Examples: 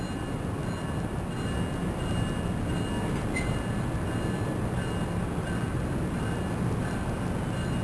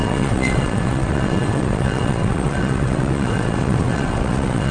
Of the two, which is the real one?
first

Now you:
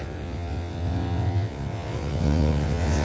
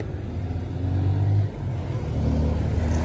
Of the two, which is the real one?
second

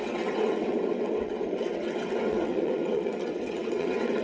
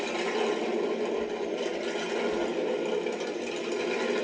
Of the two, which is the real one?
second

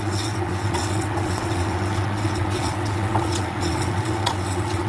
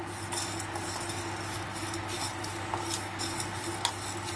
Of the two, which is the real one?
second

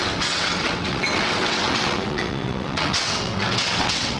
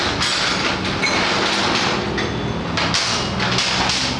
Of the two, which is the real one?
second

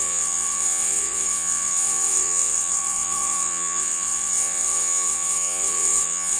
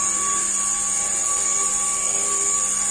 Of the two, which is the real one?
second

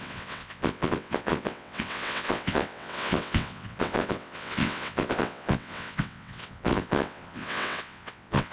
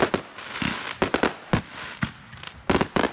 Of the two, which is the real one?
second